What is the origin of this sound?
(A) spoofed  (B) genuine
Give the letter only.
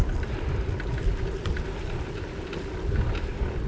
B